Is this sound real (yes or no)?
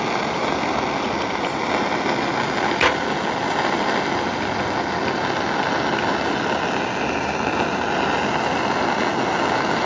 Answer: yes